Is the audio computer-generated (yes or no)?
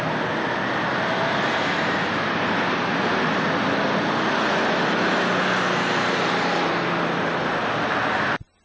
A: no